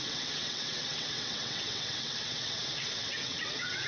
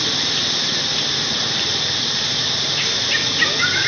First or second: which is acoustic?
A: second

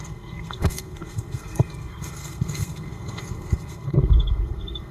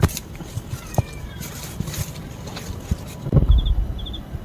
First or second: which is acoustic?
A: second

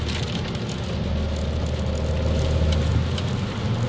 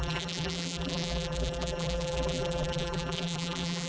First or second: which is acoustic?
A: first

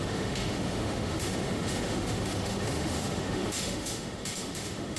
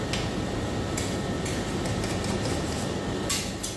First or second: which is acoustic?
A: second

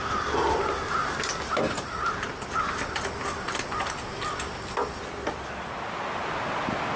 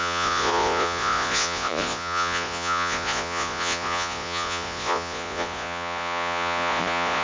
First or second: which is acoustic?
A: first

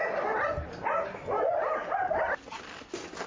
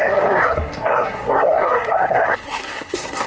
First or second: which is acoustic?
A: first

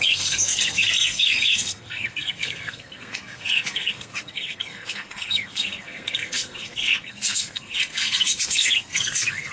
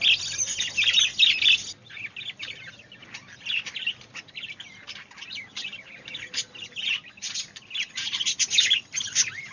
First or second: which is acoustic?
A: second